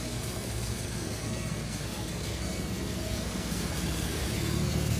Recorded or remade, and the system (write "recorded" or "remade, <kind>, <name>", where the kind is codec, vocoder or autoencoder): remade, codec, SNAC